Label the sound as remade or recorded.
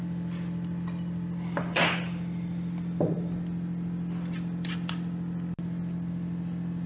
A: recorded